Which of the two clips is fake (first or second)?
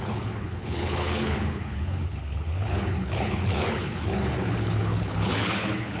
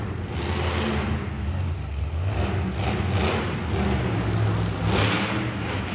first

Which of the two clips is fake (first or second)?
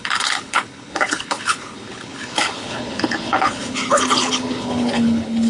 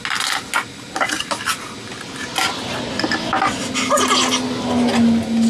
first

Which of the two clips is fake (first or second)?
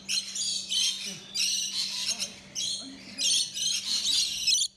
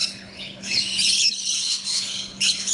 second